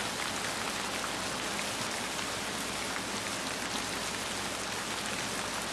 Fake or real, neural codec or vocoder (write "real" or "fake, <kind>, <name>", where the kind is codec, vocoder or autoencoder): real